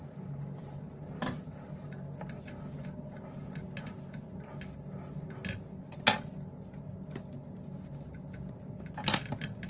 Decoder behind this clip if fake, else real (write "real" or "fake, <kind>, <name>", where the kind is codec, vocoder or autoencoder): real